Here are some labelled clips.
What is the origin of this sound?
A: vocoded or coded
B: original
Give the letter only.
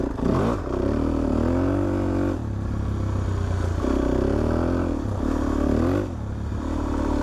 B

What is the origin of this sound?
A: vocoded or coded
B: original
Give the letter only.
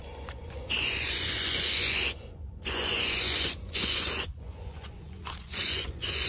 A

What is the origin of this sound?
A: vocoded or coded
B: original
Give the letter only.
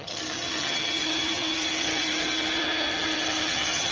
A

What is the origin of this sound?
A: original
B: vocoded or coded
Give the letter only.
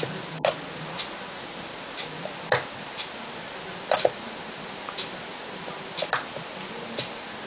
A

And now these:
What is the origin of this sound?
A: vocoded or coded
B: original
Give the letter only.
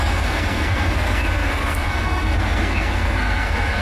A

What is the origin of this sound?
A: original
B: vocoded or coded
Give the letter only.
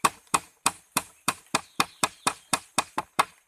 B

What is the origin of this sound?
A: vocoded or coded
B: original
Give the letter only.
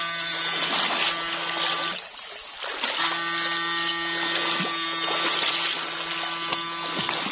B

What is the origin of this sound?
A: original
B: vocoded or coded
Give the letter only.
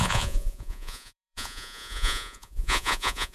B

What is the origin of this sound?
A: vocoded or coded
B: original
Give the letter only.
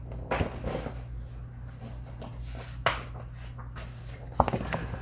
B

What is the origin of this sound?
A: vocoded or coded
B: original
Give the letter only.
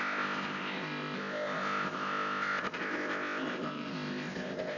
A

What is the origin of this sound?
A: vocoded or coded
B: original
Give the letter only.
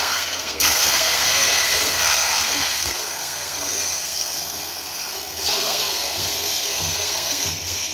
A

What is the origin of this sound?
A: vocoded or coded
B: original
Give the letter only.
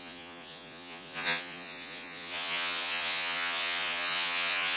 A